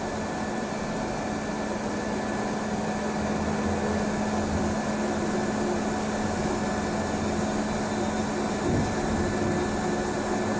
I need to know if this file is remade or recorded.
recorded